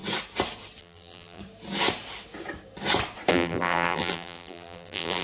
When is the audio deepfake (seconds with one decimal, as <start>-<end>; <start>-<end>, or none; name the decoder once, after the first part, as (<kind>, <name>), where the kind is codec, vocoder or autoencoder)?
0.8-1.4 (vocoder, BigVGAN v2); 3.3-5.2

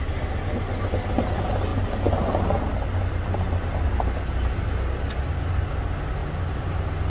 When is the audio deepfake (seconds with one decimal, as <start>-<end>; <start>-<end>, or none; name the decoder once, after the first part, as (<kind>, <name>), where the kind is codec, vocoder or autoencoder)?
none

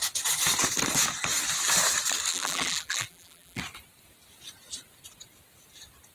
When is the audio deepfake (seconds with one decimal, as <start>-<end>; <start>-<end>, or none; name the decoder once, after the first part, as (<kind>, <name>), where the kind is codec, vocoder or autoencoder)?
2.3-3.6 (vocoder, BigVGAN v2)

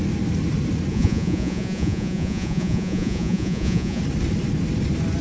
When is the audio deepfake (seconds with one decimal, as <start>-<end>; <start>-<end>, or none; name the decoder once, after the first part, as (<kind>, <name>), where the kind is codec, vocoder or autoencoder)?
0.9-4.0 (vocoder, Vocos)

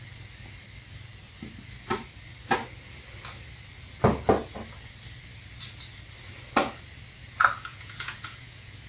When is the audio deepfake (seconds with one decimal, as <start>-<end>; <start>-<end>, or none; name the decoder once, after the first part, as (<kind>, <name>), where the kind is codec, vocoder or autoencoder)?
7.7-8.9 (vocoder, Vocos)

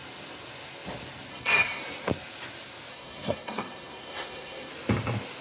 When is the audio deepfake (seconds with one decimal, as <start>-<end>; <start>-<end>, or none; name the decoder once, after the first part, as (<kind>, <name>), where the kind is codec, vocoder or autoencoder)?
1.3-1.8 (codec, SNAC); 2.9-4.7